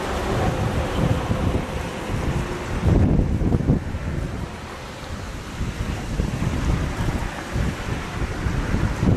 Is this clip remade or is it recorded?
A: recorded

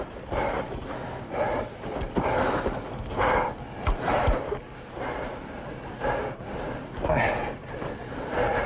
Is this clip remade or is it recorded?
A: recorded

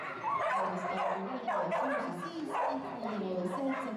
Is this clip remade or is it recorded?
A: recorded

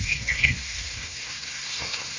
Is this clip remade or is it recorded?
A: remade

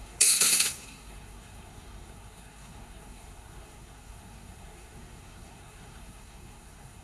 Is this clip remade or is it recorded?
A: remade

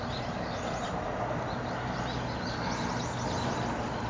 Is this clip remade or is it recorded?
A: recorded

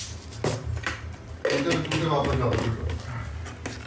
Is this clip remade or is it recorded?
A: recorded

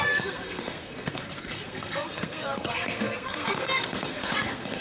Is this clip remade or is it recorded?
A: remade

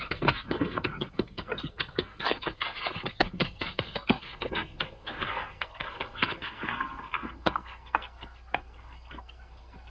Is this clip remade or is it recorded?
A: remade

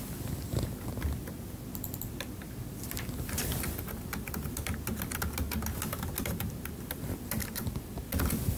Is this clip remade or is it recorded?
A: recorded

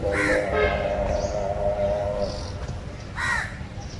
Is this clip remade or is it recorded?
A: recorded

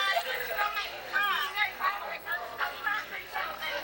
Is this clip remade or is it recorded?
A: remade